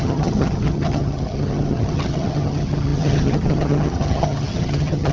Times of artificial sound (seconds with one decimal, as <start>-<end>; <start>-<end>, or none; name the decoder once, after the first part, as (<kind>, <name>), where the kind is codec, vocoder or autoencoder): 0.0-5.1 (vocoder, HiFi-GAN)